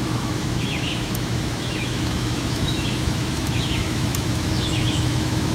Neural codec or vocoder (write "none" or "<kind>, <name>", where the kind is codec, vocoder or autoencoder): autoencoder, DAC-VAE